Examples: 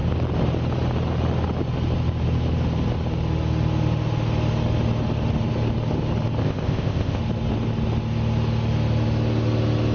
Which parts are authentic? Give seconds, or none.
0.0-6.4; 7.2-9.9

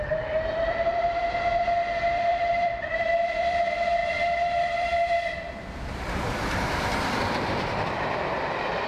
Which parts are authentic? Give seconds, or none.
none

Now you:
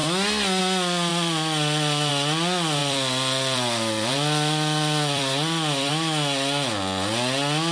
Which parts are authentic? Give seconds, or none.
0.0-1.1; 2.1-2.8; 5.9-7.7

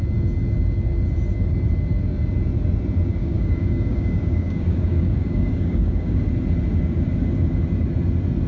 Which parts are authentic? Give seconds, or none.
0.0-3.2; 6.2-8.5